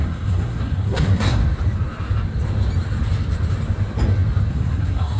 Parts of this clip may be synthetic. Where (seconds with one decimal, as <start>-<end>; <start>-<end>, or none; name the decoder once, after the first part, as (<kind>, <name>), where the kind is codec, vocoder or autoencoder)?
0.0-1.4 (codec, SNAC); 4.5-5.2